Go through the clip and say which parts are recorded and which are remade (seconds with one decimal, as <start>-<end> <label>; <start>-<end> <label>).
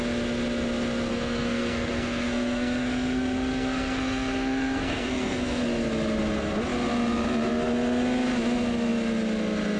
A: 0.0-1.1 recorded; 1.1-5.6 remade; 5.6-9.8 recorded